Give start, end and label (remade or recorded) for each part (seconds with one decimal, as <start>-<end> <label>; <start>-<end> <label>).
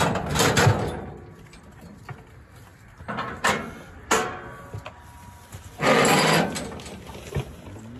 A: 0.0-8.0 recorded